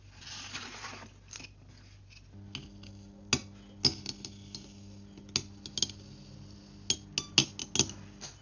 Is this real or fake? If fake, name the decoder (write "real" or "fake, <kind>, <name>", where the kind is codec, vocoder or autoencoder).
real